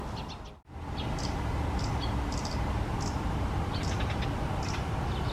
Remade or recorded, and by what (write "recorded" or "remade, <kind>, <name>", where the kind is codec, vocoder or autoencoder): recorded